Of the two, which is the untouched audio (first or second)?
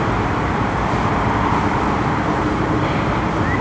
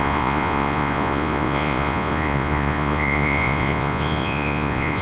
first